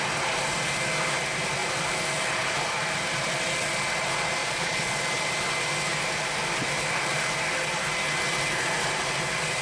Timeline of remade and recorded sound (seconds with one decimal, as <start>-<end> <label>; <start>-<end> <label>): 0.0-4.4 recorded; 4.4-4.9 remade; 4.9-9.6 recorded